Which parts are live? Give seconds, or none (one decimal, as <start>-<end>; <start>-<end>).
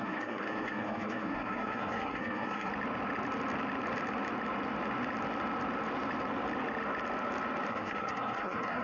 2.7-7.7